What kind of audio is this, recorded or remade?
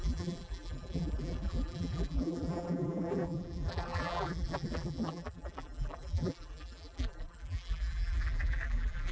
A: remade